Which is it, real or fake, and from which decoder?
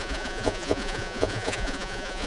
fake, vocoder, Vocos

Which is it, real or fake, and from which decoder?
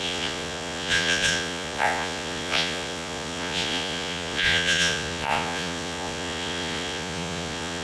fake, vocoder, Vocos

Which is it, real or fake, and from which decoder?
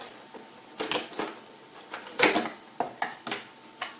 real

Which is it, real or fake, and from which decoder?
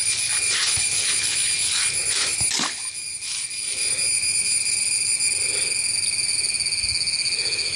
real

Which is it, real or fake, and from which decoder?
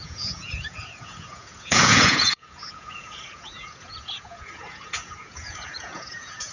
fake, vocoder, Vocos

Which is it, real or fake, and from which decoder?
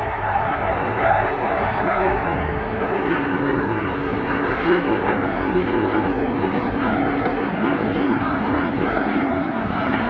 fake, codec, SNAC